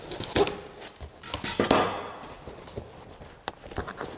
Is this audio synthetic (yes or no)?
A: no